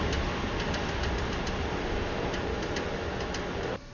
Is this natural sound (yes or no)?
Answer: yes